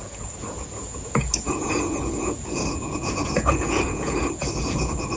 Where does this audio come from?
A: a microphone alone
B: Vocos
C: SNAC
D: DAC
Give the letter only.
B